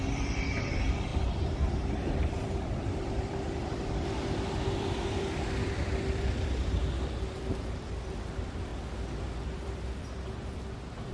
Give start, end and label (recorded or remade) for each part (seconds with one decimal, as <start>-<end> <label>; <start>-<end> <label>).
0.0-8.7 remade; 8.7-9.2 recorded; 9.2-11.1 remade